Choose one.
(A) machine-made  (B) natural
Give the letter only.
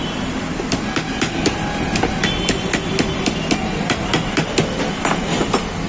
B